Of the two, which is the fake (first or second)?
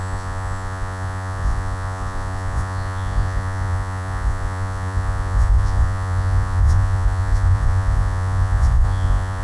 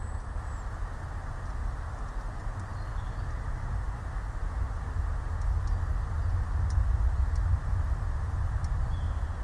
first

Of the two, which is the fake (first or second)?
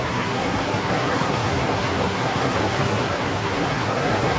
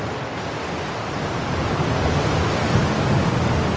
first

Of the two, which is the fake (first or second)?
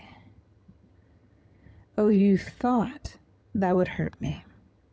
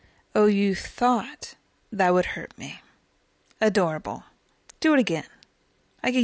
first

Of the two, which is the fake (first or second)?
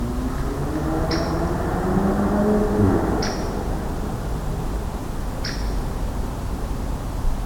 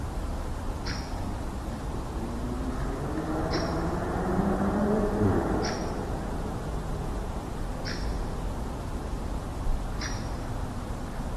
second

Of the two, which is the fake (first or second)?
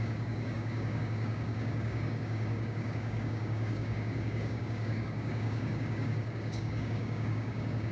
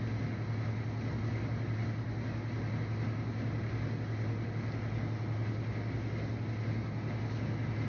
first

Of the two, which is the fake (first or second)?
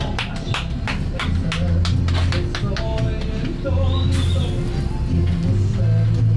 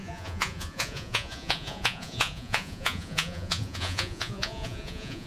second